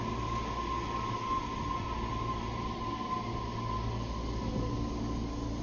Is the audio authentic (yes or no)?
yes